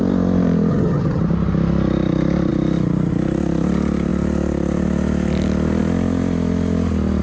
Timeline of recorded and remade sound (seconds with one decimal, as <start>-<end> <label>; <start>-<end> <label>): 0.0-0.7 recorded; 0.7-1.2 remade; 1.2-7.2 recorded